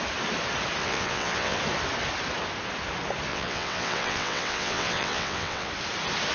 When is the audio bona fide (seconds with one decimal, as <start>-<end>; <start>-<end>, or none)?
0.0-0.8; 1.6-3.3; 5.7-6.3